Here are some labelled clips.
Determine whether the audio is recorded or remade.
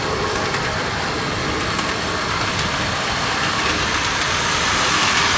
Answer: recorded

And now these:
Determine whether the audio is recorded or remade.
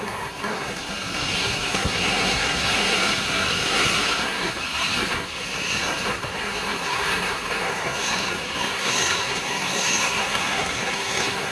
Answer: remade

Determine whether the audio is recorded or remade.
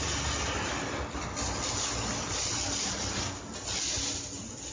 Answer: recorded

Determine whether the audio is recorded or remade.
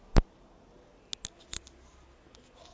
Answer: recorded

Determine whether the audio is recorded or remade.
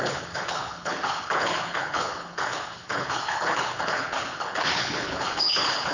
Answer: remade